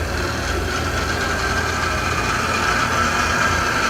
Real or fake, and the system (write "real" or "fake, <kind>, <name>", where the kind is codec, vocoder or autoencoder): real